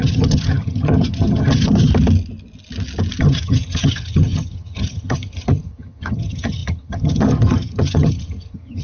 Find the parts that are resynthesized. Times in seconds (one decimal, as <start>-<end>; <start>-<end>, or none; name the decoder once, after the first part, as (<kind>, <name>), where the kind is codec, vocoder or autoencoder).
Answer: 0.0-1.9 (vocoder, HiFi-GAN); 3.2-8.8